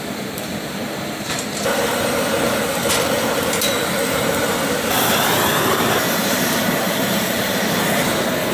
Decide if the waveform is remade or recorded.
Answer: remade